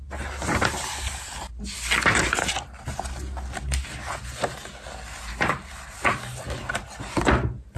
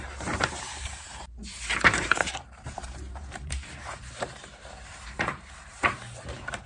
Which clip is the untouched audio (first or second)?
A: first